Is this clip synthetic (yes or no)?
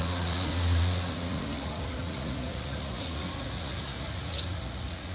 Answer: yes